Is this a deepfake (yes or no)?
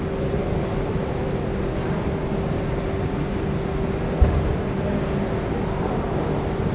no